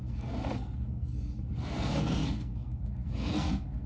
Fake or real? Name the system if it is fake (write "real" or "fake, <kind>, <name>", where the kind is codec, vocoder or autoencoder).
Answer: fake, codec, SNAC